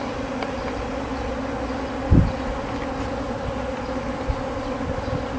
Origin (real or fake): real